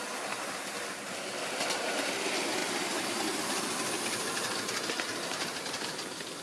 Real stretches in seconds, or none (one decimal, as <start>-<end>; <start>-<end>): 0.0-6.4